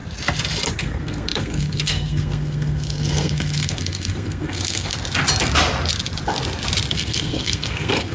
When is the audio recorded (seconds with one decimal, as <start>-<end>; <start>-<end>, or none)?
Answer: 0.0-0.8; 4.9-6.9